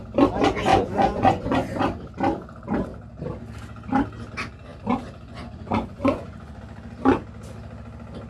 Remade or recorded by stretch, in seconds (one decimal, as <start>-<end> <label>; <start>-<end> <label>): 0.0-0.7 recorded; 0.7-1.8 remade; 1.8-5.3 recorded; 5.3-6.6 remade; 6.6-8.3 recorded